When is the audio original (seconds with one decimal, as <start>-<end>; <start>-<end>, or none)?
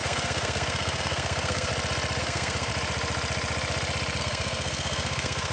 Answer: 1.7-2.2; 2.7-4.2